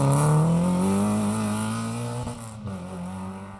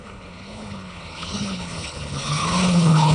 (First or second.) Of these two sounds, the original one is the first